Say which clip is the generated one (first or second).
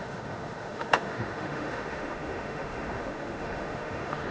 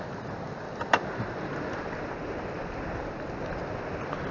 first